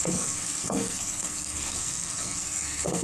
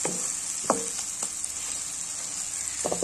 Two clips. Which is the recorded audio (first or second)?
second